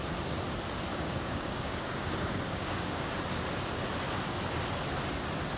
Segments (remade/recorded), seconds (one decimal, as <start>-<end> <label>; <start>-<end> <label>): 0.0-0.9 recorded; 0.9-3.1 remade; 3.1-5.6 recorded